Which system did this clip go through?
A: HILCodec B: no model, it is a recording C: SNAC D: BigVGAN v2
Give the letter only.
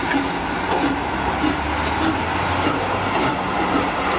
B